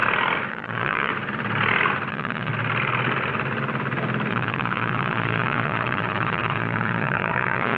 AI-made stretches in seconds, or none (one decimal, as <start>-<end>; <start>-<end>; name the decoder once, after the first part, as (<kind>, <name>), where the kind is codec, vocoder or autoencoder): 0.5-1.1 (vocoder, Vocos); 2.1-2.5; 4.3-7.8